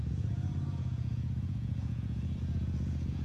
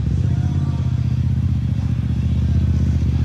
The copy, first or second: first